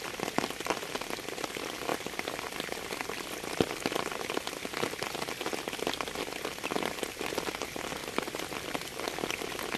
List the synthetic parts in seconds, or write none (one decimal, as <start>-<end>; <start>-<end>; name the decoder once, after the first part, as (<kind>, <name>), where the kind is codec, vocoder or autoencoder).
1.9-4.0 (vocoder, BigVGAN v2); 8.0-9.1